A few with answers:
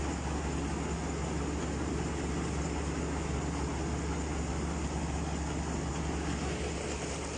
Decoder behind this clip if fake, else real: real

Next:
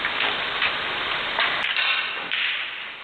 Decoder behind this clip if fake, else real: real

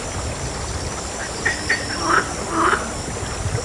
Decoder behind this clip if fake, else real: real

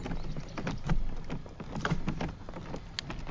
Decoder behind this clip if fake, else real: real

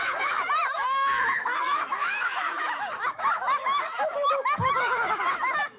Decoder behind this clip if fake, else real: fake, autoencoder, DAC-VAE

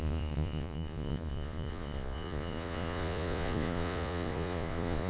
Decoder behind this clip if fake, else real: fake, vocoder, Vocos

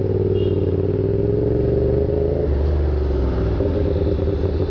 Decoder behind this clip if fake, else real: real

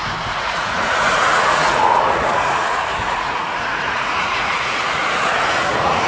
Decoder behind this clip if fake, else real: fake, vocoder, Vocos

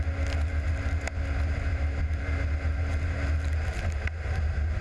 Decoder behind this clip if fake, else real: real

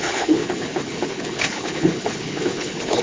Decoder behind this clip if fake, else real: fake, codec, HILCodec